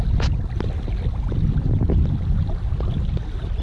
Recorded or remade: recorded